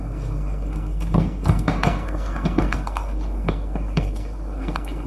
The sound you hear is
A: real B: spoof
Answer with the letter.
B